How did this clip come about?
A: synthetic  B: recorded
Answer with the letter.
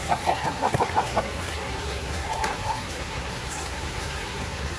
A